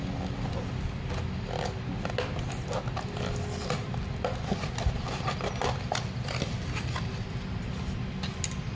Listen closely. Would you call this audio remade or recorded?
recorded